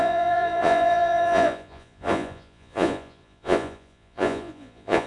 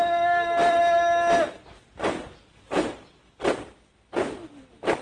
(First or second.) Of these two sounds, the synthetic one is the first